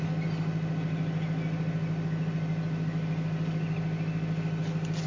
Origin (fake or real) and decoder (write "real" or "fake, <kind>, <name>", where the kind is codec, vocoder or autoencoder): real